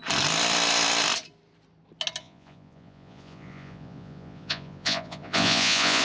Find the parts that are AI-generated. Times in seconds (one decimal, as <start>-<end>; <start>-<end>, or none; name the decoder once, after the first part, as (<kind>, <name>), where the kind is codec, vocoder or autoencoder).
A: 2.2-6.0 (vocoder, Vocos)